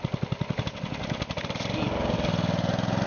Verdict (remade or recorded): recorded